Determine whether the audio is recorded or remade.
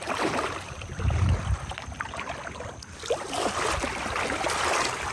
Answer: recorded